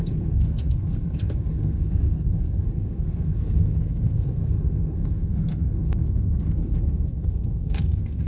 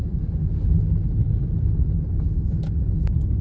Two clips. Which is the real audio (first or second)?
second